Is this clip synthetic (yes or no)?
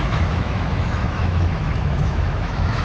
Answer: yes